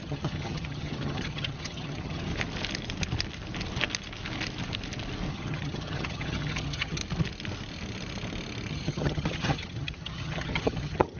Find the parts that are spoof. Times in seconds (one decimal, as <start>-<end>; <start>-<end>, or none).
0.0-2.3; 5.3-7.0; 8.7-11.2